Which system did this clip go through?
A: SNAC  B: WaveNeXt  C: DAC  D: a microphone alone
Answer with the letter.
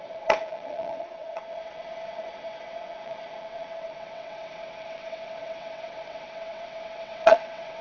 B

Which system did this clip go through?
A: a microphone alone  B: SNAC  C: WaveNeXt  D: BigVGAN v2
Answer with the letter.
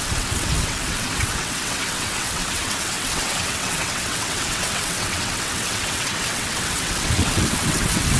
C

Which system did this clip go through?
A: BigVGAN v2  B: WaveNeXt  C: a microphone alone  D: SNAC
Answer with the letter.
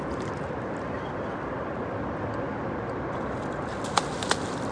C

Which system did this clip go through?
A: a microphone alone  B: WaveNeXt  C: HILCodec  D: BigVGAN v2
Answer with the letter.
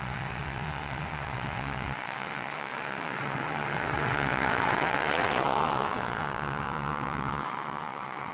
B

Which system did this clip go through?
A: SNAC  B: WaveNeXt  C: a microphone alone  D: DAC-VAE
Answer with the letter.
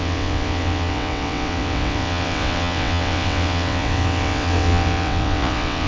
B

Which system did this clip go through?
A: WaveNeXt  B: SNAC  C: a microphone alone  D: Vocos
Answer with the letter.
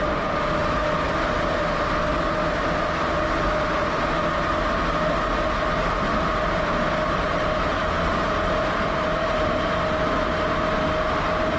C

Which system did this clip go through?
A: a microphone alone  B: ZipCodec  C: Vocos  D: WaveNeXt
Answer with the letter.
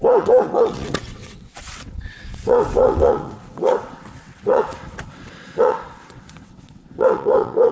D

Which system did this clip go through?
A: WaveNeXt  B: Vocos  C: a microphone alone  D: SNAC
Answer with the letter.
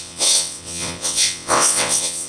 A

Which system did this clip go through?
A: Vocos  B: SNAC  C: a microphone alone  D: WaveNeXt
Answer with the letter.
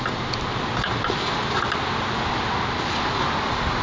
C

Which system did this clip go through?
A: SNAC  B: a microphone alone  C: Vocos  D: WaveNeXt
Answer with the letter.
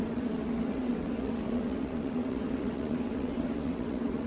D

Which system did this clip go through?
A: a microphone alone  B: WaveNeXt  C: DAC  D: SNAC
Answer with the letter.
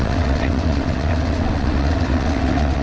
B